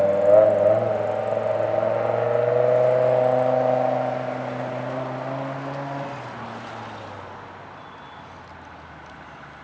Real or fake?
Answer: real